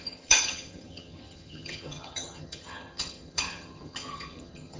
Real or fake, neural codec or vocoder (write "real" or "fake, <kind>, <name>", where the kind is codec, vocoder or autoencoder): fake, vocoder, HiFi-GAN